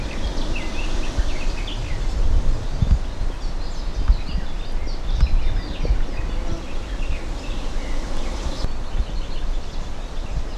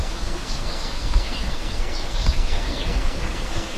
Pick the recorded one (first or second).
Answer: first